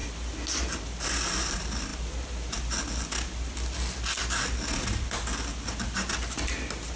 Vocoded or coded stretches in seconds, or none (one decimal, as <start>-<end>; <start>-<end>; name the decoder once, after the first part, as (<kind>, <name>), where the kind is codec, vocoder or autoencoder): none